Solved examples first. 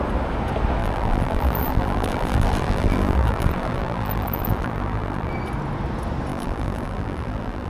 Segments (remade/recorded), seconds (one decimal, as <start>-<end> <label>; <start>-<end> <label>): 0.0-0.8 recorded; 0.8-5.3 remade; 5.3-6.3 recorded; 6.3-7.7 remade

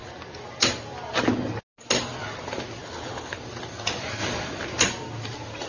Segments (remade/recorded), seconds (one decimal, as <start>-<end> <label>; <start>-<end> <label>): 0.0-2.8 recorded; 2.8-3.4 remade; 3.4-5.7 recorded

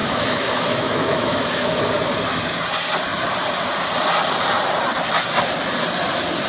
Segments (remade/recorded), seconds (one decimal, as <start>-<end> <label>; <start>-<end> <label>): 0.0-1.8 remade; 1.8-6.5 recorded

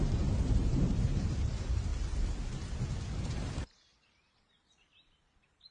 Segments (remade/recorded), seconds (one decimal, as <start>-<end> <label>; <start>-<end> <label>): 0.0-1.9 remade; 1.9-3.2 recorded; 3.2-5.7 remade

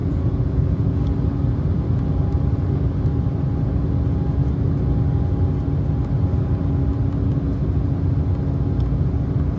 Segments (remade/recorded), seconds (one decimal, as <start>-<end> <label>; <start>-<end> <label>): 0.0-1.0 remade; 1.0-9.6 recorded